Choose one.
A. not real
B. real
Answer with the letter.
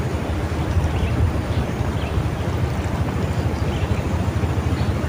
B